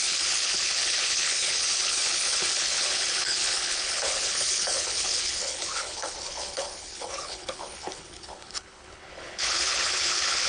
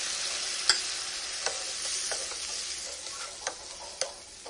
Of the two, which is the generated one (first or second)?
first